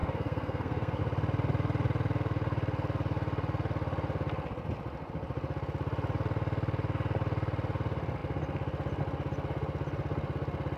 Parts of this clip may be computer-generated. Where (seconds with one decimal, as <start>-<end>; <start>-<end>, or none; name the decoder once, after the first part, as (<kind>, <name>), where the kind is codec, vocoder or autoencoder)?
0.0-1.0 (codec, SNAC)